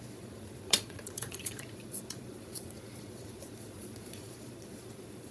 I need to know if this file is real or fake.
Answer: fake